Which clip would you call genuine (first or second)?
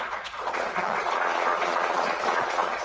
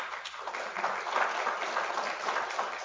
second